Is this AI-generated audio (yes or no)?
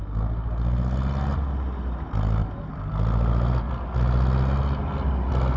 no